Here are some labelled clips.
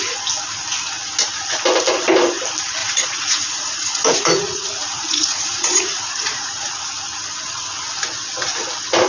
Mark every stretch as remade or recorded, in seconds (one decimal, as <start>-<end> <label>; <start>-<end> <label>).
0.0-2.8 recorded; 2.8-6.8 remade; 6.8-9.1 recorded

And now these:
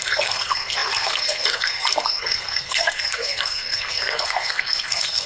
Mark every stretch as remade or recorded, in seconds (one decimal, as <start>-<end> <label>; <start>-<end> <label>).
0.0-5.3 remade

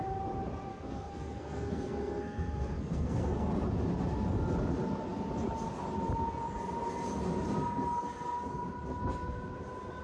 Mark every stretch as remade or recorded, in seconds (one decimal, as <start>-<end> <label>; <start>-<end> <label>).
0.0-0.7 recorded; 0.7-3.5 remade; 3.5-10.0 recorded

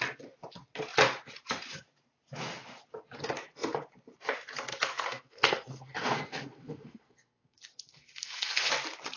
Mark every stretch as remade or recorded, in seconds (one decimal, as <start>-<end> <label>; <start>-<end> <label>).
0.0-4.7 recorded; 4.7-8.7 remade; 8.7-9.2 recorded

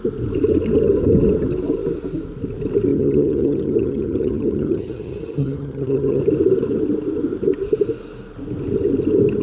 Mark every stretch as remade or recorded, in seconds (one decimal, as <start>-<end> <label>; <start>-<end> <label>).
0.0-2.9 recorded; 2.9-6.2 remade; 6.2-9.4 recorded

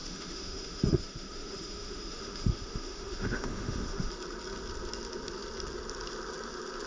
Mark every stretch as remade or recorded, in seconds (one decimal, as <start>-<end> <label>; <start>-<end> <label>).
0.0-4.1 remade; 4.1-6.9 recorded